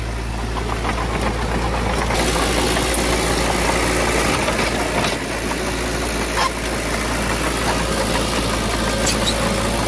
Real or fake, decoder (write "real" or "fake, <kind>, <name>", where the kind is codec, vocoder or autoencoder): real